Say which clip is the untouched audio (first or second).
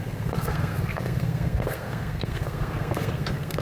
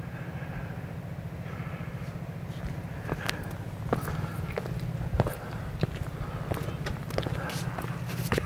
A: second